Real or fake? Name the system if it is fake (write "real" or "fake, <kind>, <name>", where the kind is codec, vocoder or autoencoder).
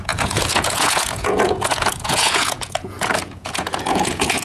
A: fake, vocoder, Vocos